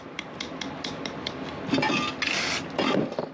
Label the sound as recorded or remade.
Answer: recorded